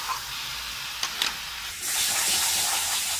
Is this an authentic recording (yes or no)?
yes